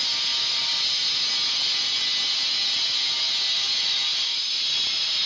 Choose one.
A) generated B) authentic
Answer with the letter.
B